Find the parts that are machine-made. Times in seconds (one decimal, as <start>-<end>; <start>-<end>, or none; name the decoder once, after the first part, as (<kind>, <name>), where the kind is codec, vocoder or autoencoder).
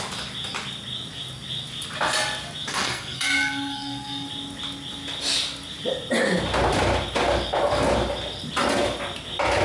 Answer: 2.7-4.3 (codec, SNAC)